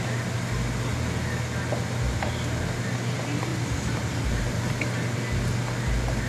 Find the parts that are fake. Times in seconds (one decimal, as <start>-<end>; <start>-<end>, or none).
3.5-4.8